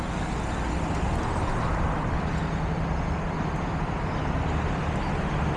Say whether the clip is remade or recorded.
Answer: recorded